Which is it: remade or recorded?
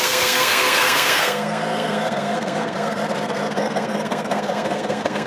remade